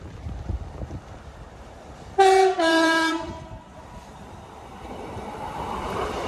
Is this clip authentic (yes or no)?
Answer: no